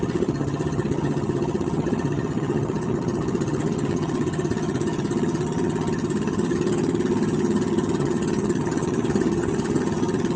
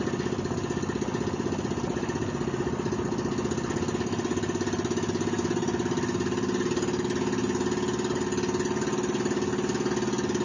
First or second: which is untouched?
second